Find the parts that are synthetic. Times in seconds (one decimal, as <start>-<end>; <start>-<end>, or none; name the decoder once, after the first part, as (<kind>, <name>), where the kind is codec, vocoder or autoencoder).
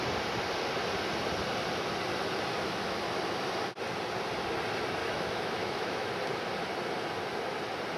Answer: 2.5-3.1 (autoencoder, DAC-VAE); 5.0-6.1